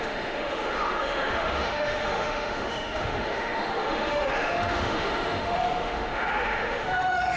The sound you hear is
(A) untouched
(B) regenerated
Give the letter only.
B